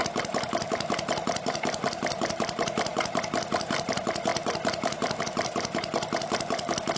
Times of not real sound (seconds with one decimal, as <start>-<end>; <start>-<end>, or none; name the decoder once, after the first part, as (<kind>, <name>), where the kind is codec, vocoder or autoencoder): none